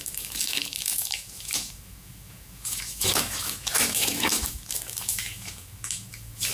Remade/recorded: remade